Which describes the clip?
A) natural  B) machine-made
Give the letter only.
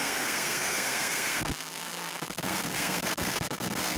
B